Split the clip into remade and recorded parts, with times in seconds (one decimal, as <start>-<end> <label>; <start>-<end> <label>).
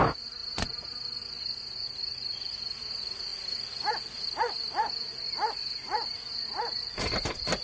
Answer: 0.0-7.6 recorded